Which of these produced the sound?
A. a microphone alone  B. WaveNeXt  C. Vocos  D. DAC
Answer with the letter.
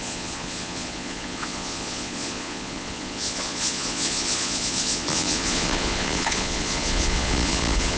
C